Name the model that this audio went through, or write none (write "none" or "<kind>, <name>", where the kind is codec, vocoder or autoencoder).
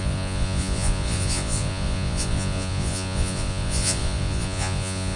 vocoder, Vocos